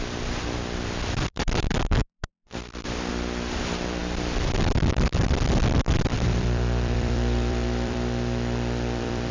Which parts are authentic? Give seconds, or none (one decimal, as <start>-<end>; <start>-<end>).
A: 2.0-3.1